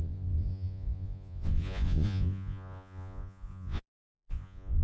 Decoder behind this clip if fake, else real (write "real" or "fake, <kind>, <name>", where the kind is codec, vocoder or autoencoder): fake, vocoder, Vocos